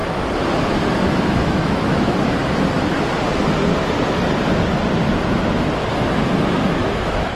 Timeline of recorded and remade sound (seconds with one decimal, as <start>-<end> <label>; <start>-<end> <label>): 0.0-1.1 recorded; 1.1-2.4 remade; 2.4-6.7 recorded; 6.7-7.4 remade